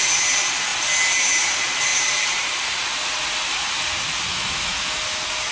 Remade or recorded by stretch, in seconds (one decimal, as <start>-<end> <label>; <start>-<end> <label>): 0.0-4.3 recorded; 4.3-5.0 remade; 5.0-5.5 recorded